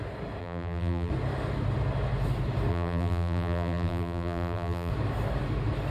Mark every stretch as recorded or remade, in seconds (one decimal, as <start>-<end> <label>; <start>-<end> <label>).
0.0-0.4 recorded; 0.4-1.1 remade; 1.1-2.7 recorded; 2.7-4.9 remade; 4.9-5.9 recorded

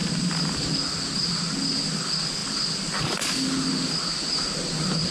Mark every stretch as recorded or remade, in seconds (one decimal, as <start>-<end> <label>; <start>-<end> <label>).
0.0-0.7 remade; 0.7-5.1 recorded

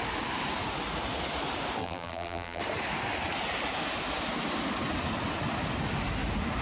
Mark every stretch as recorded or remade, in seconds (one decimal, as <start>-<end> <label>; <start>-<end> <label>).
0.0-1.8 recorded; 1.8-2.6 remade; 2.6-6.6 recorded

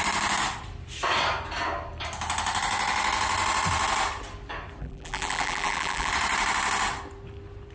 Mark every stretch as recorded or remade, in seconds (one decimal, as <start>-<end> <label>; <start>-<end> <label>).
0.0-4.8 recorded; 4.8-6.1 remade; 6.1-7.7 recorded

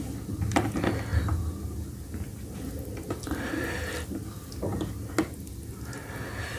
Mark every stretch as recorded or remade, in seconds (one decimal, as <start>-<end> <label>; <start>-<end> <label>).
0.0-6.6 recorded

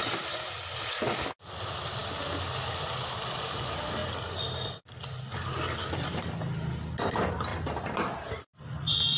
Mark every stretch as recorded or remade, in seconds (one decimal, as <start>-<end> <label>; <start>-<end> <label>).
0.0-7.5 recorded; 7.5-8.6 remade; 8.6-9.2 recorded

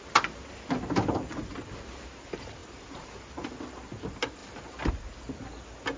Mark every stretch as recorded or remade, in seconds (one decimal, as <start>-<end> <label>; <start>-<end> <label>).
0.0-2.6 recorded; 2.6-3.5 remade; 3.5-6.0 recorded

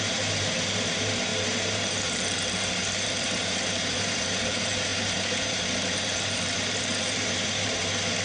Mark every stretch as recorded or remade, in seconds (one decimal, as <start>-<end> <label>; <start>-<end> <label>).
0.0-8.2 remade